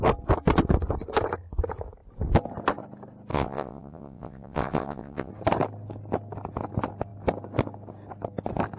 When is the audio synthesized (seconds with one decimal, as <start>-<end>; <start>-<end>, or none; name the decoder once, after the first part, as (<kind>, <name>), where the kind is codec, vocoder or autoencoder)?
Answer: 3.3-5.3 (vocoder, WaveNeXt)

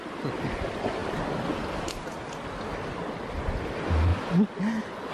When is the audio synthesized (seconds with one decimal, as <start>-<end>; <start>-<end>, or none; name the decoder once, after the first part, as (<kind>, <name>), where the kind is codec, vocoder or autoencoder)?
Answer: none